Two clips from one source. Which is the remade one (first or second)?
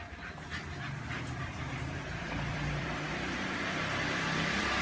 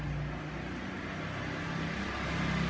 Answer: first